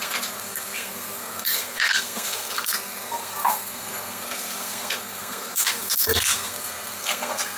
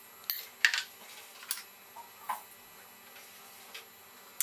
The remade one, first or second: first